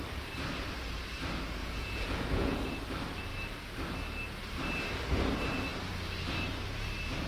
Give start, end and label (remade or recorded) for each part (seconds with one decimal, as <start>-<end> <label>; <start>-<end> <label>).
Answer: 0.0-1.6 recorded; 1.6-2.7 remade; 2.7-7.3 recorded